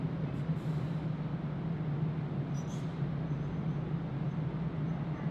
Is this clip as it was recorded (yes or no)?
yes